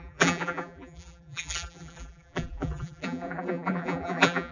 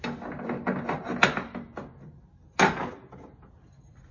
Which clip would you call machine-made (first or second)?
first